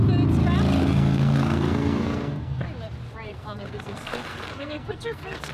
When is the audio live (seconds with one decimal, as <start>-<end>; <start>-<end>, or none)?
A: 0.0-0.8; 2.6-3.3